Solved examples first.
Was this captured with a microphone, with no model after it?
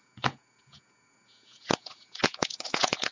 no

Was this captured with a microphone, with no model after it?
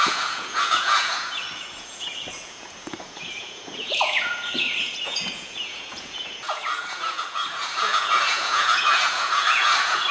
no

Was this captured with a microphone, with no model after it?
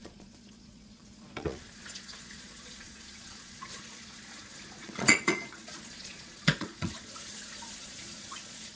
no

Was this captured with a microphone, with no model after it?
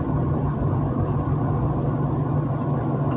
yes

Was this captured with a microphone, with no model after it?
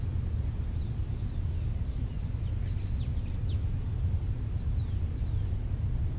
yes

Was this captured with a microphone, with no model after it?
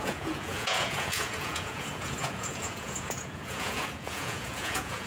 no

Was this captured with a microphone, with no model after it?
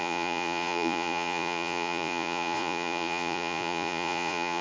no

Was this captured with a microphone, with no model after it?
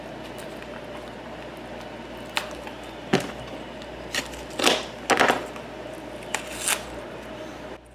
yes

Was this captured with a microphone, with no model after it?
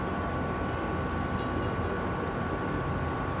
yes